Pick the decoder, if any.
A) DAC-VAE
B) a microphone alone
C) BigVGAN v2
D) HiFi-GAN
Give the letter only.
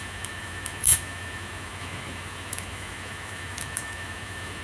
A